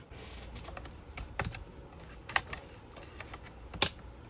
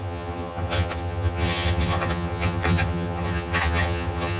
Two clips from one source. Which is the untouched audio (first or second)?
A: first